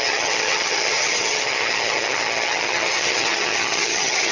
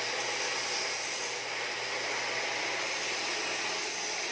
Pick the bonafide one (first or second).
second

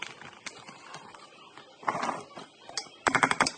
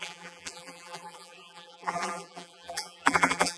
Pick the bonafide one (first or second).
first